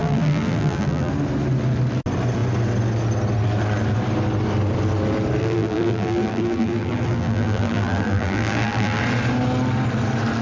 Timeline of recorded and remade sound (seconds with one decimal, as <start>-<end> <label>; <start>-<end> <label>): 0.0-1.1 remade; 1.1-5.4 recorded; 5.4-9.0 remade; 9.0-10.4 recorded